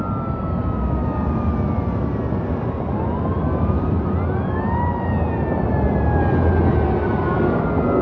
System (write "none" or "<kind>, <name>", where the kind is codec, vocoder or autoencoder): none